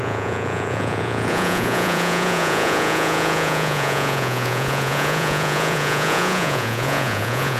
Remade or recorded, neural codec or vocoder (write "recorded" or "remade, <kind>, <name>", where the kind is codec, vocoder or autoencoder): remade, vocoder, Vocos